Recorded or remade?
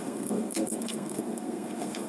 remade